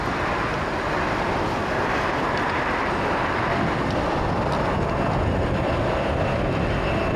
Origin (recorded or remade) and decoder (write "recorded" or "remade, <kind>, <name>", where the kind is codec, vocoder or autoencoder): recorded